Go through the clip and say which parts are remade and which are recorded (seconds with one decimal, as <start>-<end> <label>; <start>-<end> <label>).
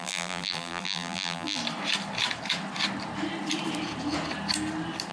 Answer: 0.0-1.6 remade; 1.6-5.1 recorded